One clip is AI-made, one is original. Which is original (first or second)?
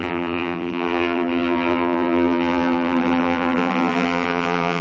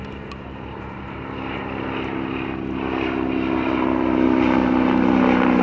second